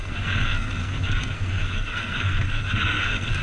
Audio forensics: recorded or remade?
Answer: remade